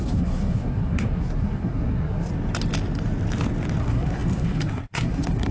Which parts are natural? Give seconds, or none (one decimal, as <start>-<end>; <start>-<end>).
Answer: 2.3-3.8